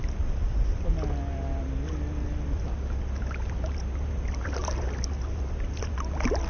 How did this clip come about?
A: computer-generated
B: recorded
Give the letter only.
B